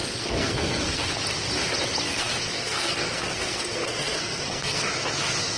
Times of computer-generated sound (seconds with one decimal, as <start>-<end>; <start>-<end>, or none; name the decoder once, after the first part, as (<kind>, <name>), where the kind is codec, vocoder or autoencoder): 0.0-1.1 (codec, SNAC); 2.1-4.9